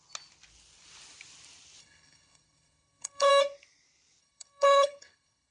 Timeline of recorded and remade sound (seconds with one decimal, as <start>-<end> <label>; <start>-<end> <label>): 0.0-1.8 recorded; 1.8-3.3 remade; 3.3-4.2 recorded; 4.2-5.5 remade

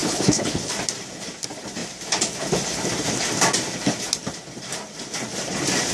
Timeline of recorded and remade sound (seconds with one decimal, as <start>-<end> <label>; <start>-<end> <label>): 0.0-0.7 remade; 0.7-5.9 recorded

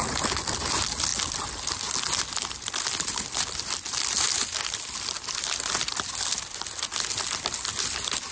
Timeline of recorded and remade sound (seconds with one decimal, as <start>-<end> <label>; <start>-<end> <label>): 0.0-8.3 recorded

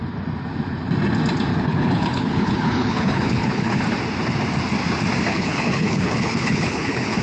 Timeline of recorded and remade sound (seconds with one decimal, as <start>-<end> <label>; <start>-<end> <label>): 0.0-1.5 recorded; 1.5-3.8 remade; 3.8-5.3 recorded; 5.3-7.2 remade